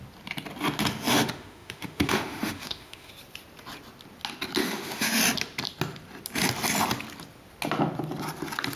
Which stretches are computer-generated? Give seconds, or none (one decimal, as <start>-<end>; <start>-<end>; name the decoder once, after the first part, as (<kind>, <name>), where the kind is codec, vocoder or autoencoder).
1.1-3.1 (autoencoder, DAC-VAE); 4.6-5.2